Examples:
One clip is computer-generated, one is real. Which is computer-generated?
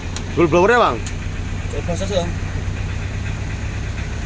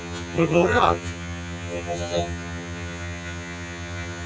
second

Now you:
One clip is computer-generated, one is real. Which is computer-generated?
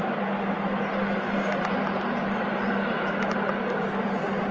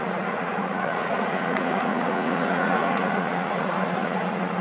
second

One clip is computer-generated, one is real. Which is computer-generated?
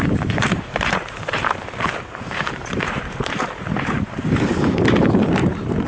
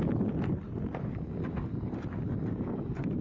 first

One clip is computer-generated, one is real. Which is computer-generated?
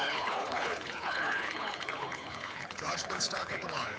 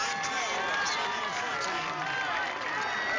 first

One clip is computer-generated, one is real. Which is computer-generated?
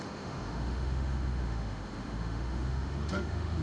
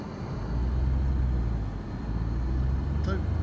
first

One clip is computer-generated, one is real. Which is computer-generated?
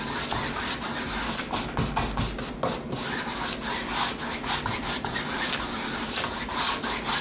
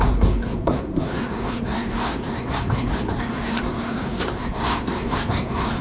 second